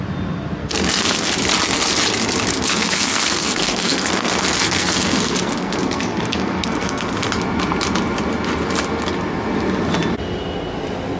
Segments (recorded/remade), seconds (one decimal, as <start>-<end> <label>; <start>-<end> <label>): 0.0-0.6 recorded; 0.6-1.3 remade; 1.3-2.5 recorded; 2.5-7.3 remade; 7.3-11.2 recorded